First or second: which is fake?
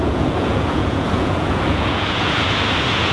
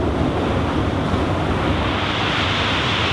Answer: first